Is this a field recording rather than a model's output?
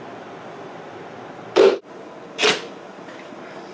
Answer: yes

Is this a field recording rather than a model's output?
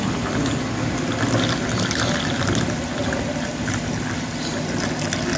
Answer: yes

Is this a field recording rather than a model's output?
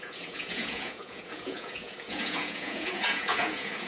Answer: no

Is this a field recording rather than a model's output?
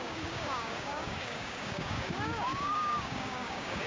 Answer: no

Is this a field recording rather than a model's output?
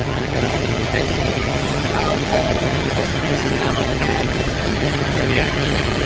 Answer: no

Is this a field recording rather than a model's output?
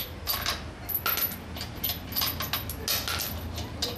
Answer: yes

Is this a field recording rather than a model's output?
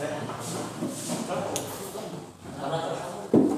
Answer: yes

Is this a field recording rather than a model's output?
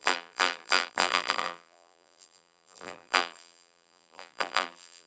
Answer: no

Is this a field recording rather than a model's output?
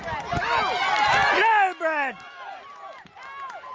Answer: yes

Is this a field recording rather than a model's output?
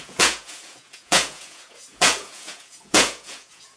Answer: no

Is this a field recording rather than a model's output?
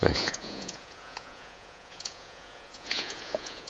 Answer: no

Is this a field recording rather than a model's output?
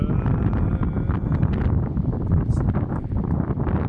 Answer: yes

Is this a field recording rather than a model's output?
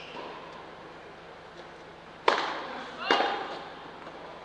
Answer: yes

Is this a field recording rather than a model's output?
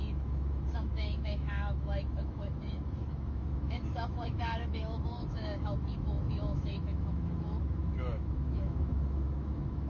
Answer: no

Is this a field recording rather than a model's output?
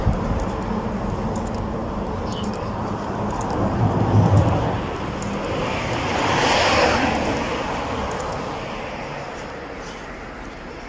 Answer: yes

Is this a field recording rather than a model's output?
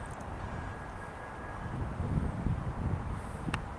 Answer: yes